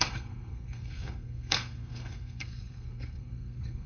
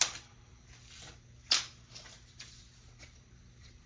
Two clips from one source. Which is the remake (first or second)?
first